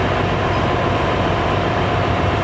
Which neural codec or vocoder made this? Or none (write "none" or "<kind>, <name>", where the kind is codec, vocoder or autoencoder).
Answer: vocoder, BigVGAN v2